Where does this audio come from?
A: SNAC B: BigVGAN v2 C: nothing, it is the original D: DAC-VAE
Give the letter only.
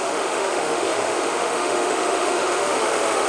D